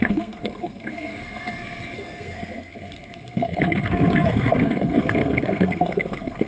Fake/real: fake